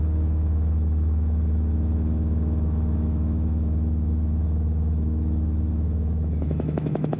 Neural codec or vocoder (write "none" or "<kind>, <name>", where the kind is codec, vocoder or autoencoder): autoencoder, DAC-VAE